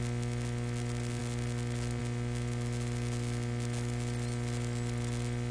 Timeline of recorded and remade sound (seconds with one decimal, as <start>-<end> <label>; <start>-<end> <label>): 0.0-5.5 recorded